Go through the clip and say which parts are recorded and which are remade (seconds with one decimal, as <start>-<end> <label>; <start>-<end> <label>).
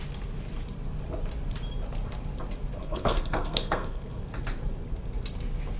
0.0-2.8 recorded; 2.8-4.2 remade; 4.2-5.8 recorded